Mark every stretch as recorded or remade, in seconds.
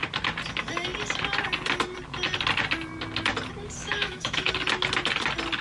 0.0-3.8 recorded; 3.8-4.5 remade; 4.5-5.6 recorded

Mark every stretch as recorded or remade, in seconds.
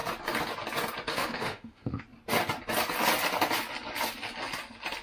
0.0-1.1 recorded; 1.1-2.0 remade; 2.0-5.0 recorded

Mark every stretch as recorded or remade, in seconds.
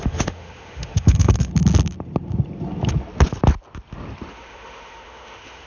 0.0-1.5 remade; 1.5-4.3 recorded; 4.3-5.7 remade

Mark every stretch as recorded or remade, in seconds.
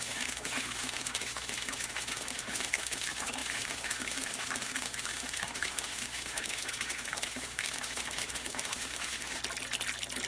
0.0-9.4 remade; 9.4-10.3 recorded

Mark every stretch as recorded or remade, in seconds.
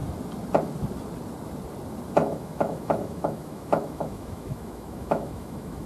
0.0-2.2 recorded; 2.2-5.9 remade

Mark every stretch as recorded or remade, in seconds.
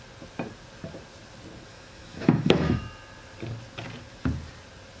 0.0-1.7 recorded; 1.7-2.8 remade; 2.8-5.0 recorded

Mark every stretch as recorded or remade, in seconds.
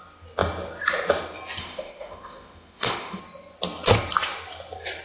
0.0-1.6 recorded; 1.6-3.2 remade; 3.2-5.0 recorded